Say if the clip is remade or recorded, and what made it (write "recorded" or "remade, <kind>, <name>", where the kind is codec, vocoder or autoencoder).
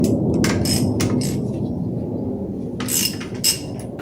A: recorded